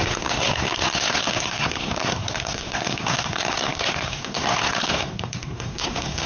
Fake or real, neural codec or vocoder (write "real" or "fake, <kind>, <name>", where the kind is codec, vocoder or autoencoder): fake, codec, SNAC